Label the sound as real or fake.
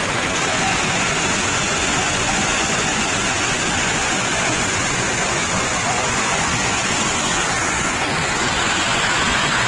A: fake